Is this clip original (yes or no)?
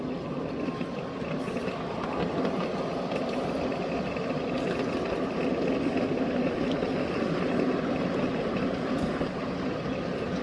yes